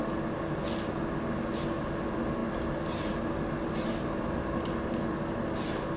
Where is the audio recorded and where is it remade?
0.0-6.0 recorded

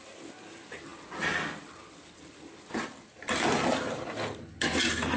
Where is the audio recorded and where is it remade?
0.0-5.2 recorded

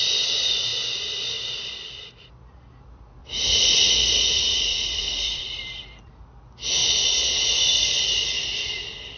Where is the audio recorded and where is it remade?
0.0-3.2 recorded; 3.2-3.9 remade; 3.9-4.3 recorded; 4.3-5.6 remade; 5.6-9.2 recorded